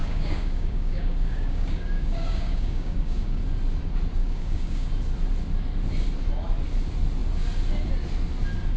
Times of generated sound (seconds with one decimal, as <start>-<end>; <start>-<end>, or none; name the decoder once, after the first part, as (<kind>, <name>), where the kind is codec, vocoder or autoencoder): 0.0-3.4 (codec, DAC); 4.2-4.9